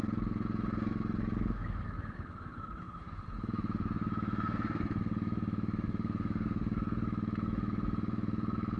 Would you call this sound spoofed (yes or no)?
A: yes